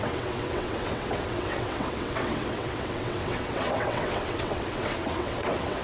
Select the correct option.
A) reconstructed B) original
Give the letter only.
A